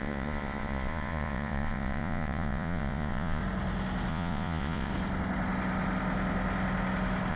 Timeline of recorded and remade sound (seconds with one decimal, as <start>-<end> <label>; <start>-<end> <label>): 0.0-3.4 remade; 3.4-4.1 recorded; 4.1-4.9 remade; 4.9-7.3 recorded